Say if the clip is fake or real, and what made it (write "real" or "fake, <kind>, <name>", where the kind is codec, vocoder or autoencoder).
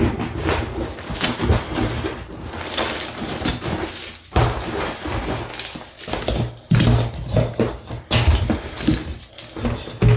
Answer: real